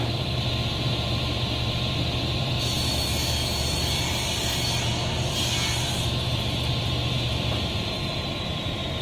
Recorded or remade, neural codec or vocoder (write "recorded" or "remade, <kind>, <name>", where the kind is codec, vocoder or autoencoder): remade, vocoder, BigVGAN v2